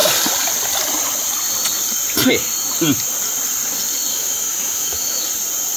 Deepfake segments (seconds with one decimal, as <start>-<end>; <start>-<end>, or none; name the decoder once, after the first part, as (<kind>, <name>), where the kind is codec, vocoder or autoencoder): 4.1-5.3 (autoencoder, DAC-VAE)